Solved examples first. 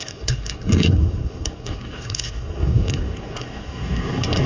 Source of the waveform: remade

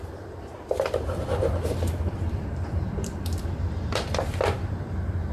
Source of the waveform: remade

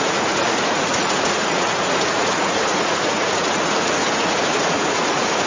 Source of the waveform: remade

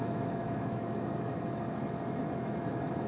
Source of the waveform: remade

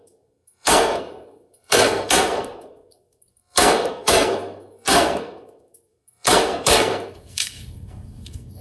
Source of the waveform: remade